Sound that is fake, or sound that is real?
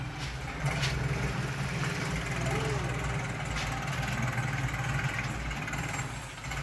real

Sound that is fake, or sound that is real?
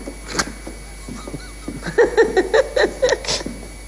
real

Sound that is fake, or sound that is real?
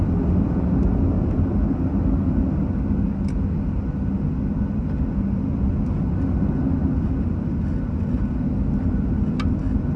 real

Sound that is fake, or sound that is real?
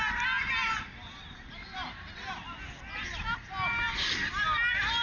real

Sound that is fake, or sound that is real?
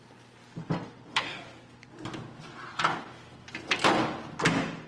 real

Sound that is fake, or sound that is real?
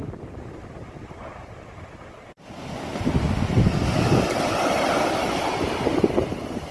real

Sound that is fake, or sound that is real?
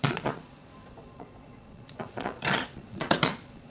fake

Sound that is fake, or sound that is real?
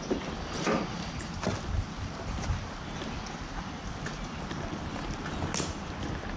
real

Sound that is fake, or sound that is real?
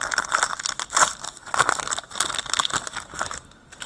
real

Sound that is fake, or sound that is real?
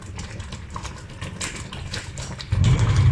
real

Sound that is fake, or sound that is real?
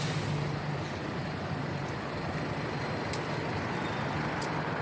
real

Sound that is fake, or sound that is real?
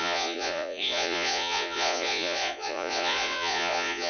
fake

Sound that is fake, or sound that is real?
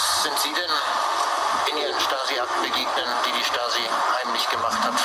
real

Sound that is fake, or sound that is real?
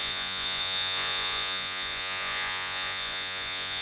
fake